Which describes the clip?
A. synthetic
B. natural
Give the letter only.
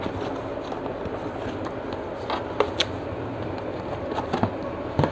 B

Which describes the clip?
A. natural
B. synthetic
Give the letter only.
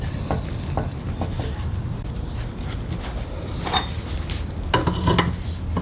A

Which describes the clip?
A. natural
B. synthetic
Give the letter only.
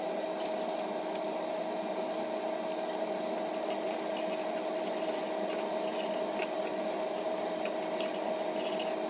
A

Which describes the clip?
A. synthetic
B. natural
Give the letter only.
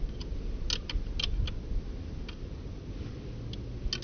B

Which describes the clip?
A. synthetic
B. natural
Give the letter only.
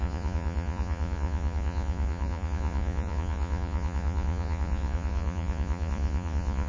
A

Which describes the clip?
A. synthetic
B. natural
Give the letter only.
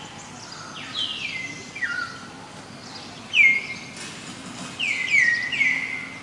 B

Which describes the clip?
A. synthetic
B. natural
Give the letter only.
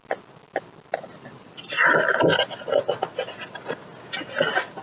B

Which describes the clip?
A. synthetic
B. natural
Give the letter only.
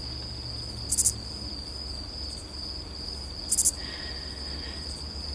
B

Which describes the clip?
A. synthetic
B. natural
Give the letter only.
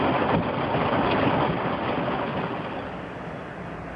B